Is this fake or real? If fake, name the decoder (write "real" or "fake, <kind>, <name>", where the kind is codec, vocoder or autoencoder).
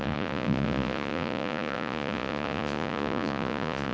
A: fake, vocoder, Vocos